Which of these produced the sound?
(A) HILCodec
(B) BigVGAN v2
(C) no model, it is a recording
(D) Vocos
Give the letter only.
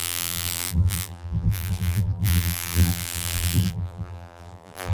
B